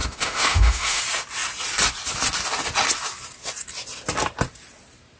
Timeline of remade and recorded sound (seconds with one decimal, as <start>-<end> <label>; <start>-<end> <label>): 0.0-1.0 remade; 1.0-5.2 recorded